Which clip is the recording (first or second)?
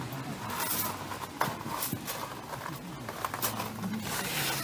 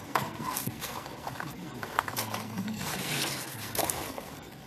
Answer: first